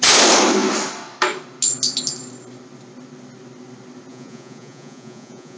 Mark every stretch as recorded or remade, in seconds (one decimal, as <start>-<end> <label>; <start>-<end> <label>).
0.0-4.1 recorded; 4.1-5.6 remade